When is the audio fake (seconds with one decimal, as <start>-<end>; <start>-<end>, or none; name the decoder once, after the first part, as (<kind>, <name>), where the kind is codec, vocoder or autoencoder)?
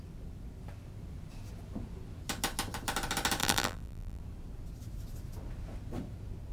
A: 3.4-4.2 (vocoder, BigVGAN v2)